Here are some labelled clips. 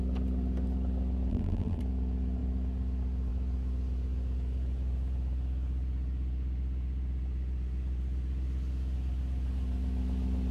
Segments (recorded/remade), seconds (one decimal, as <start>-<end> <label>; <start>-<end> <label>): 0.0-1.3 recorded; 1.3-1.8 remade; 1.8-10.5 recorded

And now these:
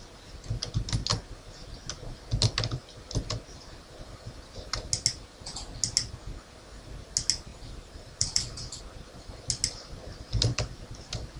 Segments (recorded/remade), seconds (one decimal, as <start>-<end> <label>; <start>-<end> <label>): 0.0-7.5 recorded; 7.5-8.8 remade; 8.8-11.4 recorded

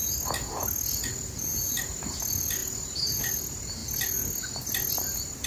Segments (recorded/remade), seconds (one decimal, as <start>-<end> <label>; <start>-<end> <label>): 0.0-5.5 recorded